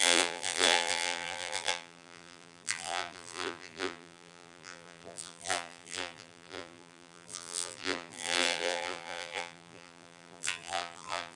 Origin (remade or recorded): remade